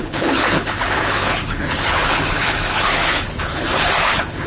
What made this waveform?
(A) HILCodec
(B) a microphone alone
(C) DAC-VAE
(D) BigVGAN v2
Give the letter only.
A